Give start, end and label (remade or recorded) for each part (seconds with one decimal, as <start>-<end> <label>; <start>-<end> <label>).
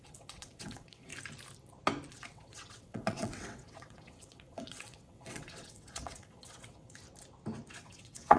0.0-1.1 remade; 1.1-2.1 recorded; 2.1-7.0 remade; 7.0-7.7 recorded; 7.7-8.4 remade